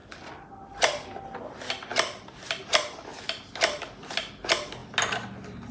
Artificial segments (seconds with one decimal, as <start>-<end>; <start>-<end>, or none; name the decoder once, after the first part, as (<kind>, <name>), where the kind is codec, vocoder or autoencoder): none